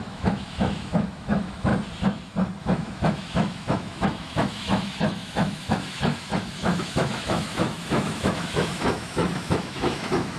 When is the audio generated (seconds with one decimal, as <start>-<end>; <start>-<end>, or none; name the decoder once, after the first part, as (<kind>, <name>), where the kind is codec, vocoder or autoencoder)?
0.0-1.7 (autoencoder, DAC-VAE); 2.6-10.4